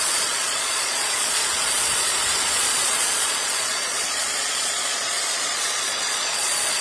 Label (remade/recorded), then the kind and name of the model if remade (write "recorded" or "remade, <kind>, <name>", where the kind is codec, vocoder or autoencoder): remade, vocoder, Vocos